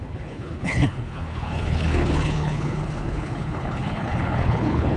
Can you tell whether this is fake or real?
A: fake